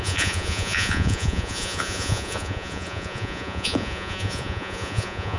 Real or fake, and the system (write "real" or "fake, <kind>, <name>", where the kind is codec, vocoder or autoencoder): fake, vocoder, Vocos